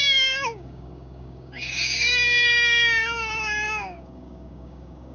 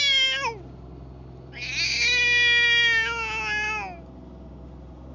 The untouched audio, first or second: second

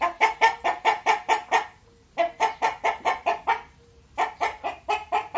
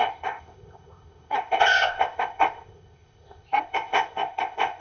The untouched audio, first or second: first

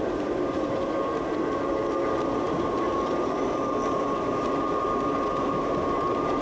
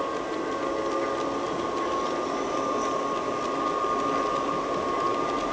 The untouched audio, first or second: second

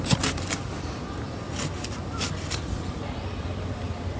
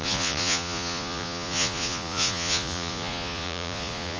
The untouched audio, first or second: first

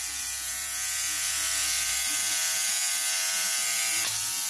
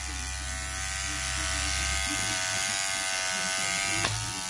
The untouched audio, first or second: second